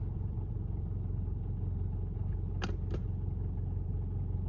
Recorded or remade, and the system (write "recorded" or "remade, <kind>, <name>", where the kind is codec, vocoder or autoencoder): recorded